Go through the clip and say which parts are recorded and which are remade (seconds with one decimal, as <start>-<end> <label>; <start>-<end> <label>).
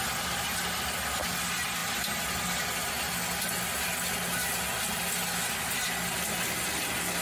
0.0-7.2 recorded